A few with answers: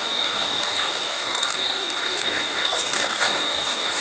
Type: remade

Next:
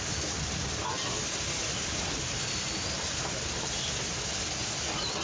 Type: recorded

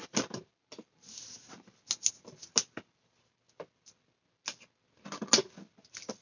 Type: recorded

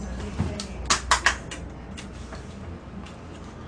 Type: recorded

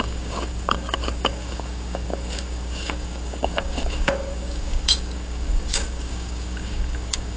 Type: remade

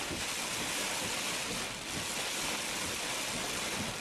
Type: recorded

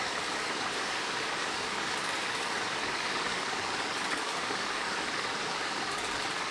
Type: remade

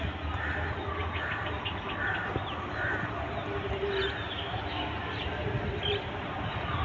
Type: recorded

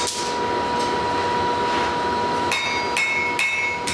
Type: recorded